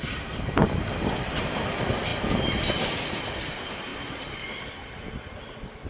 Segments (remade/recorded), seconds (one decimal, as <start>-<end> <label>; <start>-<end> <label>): 0.0-3.9 recorded; 3.9-4.4 remade; 4.4-5.9 recorded